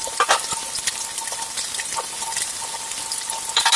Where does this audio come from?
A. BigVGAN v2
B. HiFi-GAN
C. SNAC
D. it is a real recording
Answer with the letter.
A